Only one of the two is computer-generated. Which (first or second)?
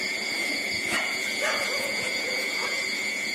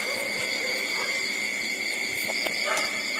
first